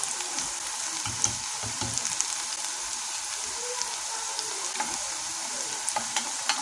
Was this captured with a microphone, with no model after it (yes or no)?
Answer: yes